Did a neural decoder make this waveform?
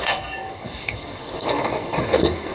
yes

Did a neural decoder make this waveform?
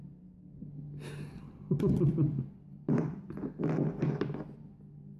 yes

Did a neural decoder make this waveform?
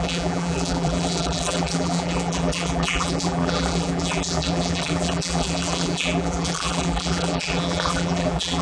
yes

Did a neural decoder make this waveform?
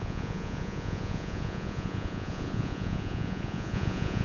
yes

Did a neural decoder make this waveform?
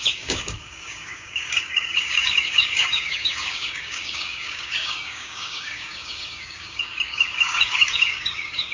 yes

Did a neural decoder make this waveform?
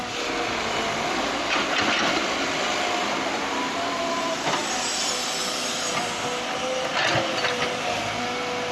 no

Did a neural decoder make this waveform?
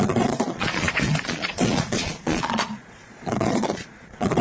yes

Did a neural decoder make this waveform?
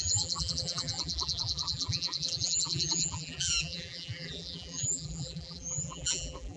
yes